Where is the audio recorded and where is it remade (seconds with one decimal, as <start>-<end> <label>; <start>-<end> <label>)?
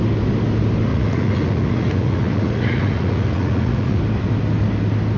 0.0-0.9 recorded; 0.9-4.0 remade; 4.0-5.2 recorded